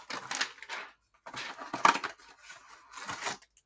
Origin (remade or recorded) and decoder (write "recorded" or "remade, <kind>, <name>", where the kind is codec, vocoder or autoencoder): recorded